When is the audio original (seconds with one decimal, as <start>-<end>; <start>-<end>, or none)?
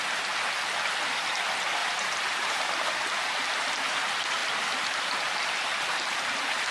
0.0-1.8; 2.7-6.7